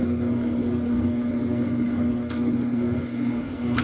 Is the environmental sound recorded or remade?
remade